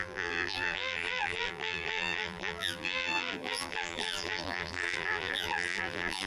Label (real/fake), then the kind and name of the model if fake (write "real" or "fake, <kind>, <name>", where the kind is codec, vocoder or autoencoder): fake, vocoder, BigVGAN v2